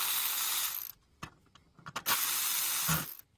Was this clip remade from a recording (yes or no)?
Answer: no